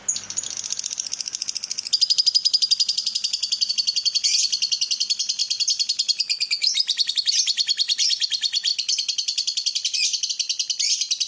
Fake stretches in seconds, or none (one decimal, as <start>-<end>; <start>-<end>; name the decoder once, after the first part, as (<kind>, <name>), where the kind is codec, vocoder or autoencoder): 2.4-3.7 (vocoder, BigVGAN v2); 5.4-7.1